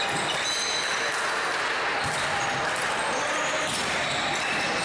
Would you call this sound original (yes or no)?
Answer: yes